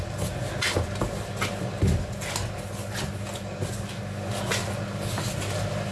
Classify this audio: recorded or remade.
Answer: recorded